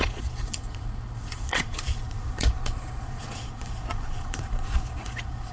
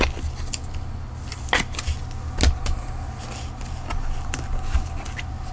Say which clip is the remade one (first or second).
first